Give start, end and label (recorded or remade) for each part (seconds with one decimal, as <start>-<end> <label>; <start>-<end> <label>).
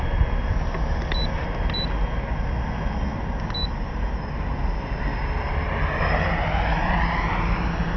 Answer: 0.0-8.0 recorded